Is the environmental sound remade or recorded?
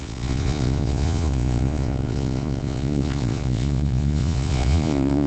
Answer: remade